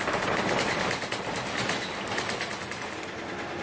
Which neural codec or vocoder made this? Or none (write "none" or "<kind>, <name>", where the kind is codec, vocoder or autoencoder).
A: none